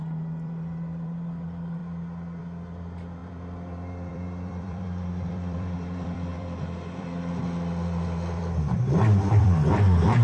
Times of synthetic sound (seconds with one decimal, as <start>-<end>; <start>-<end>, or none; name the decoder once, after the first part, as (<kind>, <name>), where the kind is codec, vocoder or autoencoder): 0.0-1.8 (vocoder, BigVGAN v2); 2.4-10.2